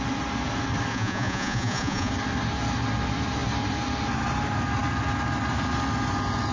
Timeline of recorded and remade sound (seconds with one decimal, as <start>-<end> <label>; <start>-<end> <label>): 0.0-0.9 recorded; 0.9-2.1 remade; 2.1-6.5 recorded